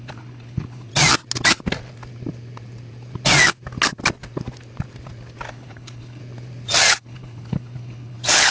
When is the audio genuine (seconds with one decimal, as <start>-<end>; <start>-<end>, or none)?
0.9-5.5; 6.2-6.9